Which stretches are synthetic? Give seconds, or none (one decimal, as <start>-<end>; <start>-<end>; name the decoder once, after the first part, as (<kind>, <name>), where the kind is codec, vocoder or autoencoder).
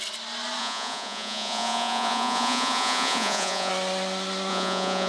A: 0.6-3.7 (vocoder, Vocos); 4.5-5.1